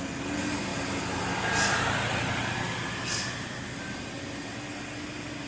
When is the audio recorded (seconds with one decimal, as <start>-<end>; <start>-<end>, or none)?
0.0-5.5